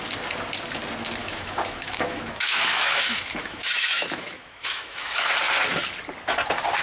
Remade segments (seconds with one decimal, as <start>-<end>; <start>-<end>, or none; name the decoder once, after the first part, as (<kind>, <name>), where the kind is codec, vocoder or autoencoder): 1.2-5.3 (autoencoder, DAC-VAE)